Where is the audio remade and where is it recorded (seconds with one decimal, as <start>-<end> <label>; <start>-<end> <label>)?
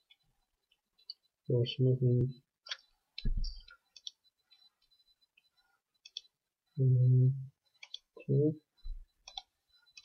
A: 0.0-6.9 recorded; 6.9-8.5 remade; 8.5-10.0 recorded